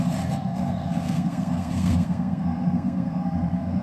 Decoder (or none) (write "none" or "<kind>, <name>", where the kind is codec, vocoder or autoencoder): codec, SNAC